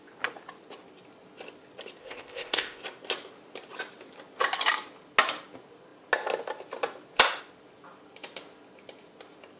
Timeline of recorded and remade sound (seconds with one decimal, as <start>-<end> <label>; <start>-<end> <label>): 0.0-2.0 recorded; 2.0-2.8 remade; 2.8-9.6 recorded